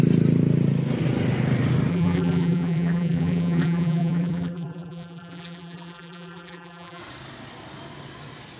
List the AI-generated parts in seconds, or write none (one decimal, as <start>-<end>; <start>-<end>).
1.9-7.0